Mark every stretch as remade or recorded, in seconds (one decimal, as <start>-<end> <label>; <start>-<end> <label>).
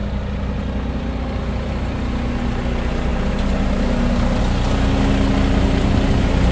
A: 0.0-6.5 recorded